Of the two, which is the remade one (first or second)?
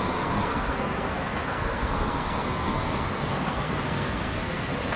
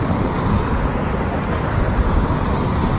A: first